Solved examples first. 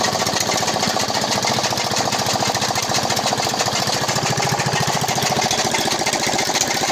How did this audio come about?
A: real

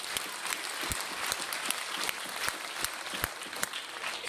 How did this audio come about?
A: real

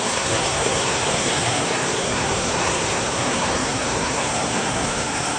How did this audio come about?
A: fake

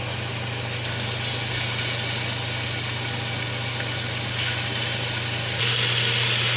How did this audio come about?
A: real